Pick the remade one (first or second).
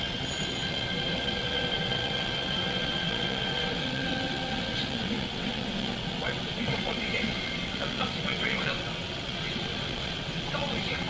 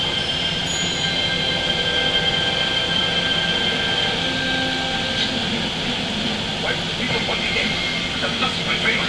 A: first